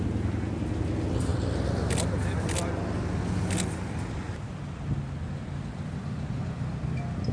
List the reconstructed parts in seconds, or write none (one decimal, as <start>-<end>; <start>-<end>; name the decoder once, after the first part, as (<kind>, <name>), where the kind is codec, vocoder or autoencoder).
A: none